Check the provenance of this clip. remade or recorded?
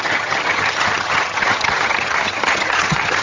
remade